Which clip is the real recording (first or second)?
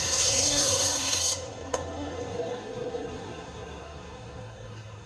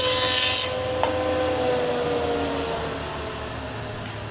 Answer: second